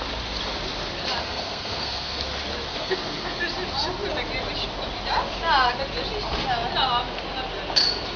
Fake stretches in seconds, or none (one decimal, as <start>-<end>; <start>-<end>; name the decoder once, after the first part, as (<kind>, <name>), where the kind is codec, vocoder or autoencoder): 1.2-2.2 (codec, SNAC); 2.7-3.4